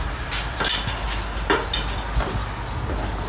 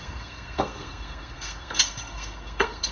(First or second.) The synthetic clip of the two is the second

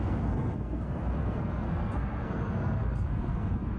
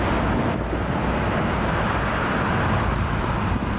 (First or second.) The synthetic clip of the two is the first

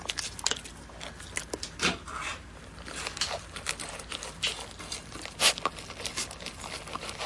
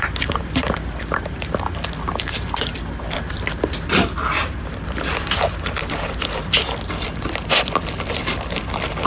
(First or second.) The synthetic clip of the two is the second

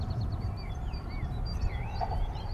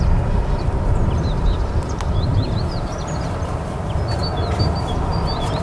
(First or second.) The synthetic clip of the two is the first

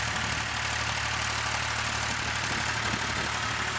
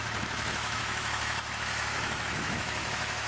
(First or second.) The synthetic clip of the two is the second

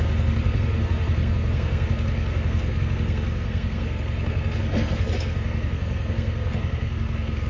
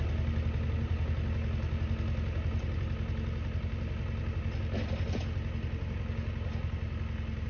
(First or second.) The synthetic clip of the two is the first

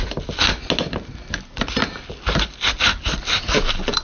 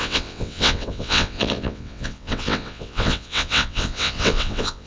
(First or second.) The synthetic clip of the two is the second